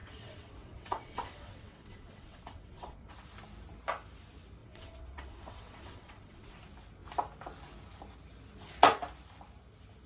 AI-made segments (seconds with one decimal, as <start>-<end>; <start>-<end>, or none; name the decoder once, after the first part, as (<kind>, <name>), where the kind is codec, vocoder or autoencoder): 0.0-3.1 (vocoder, WaveNeXt); 4.6-6.6

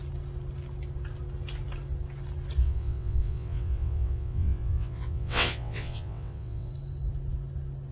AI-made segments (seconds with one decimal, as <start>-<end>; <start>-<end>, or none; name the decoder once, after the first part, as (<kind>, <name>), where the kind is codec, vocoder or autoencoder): 2.6-6.7 (vocoder, WaveNeXt)